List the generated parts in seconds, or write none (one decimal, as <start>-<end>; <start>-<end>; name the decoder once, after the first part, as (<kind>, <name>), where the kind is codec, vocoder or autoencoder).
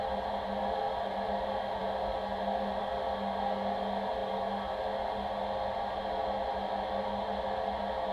none